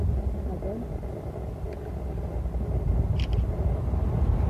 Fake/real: real